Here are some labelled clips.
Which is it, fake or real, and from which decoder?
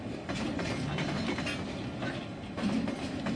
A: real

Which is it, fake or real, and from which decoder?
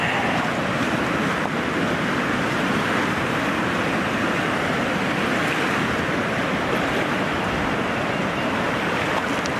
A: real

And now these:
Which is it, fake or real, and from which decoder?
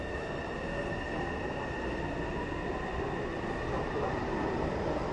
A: real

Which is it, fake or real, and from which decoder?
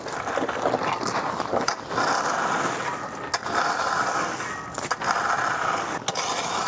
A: real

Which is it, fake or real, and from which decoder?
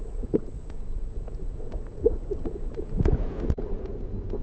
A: fake, vocoder, Vocos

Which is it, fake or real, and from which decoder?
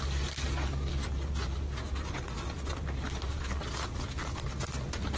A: real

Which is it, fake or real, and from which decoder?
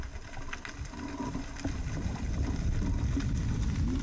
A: real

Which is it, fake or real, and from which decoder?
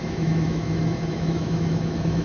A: fake, autoencoder, DAC-VAE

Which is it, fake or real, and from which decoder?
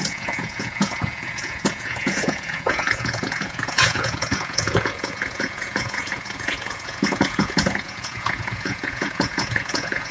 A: fake, vocoder, Vocos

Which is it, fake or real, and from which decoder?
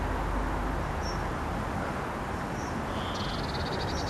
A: real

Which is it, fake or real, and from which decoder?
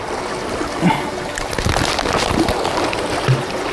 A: real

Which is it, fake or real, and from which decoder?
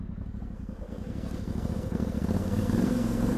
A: fake, codec, SNAC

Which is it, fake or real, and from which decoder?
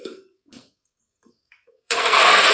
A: fake, codec, SNAC